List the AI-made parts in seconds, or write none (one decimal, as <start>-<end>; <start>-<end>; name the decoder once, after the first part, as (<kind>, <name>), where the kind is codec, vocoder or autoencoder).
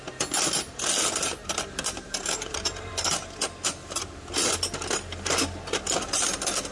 1.4-2.9 (vocoder, BigVGAN v2); 3.8-4.5